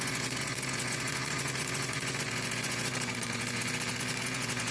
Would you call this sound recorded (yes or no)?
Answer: no